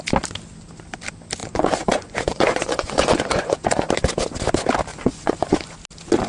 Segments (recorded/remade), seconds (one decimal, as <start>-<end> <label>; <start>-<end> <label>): 0.0-1.4 recorded; 1.4-3.9 remade; 3.9-4.9 recorded; 4.9-5.7 remade; 5.7-6.3 recorded

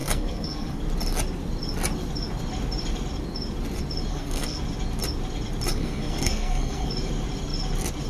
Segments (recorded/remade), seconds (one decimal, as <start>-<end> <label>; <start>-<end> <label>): 0.0-0.8 remade; 0.8-4.1 recorded; 4.1-4.6 remade; 4.6-5.7 recorded; 5.7-6.9 remade; 6.9-8.1 recorded

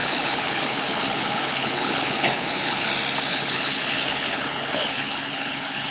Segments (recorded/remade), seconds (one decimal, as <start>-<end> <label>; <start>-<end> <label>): 0.0-2.9 remade; 2.9-3.3 recorded; 3.3-5.9 remade

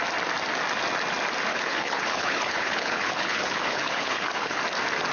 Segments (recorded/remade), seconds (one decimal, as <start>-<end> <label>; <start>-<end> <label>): 0.0-1.5 recorded; 1.5-4.6 remade; 4.6-5.1 recorded